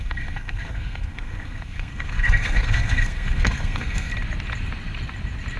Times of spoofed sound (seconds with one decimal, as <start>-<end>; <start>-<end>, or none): 0.0-4.1

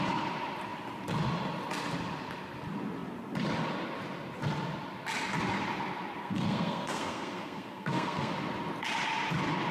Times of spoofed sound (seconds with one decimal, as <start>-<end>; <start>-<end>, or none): 6.2-8.3

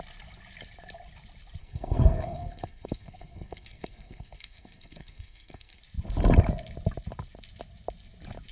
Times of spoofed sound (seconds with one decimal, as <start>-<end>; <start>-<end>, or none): 1.6-5.8